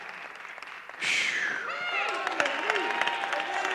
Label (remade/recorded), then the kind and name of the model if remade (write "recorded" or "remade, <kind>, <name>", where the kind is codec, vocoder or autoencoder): recorded